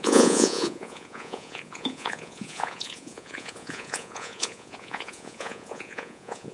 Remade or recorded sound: remade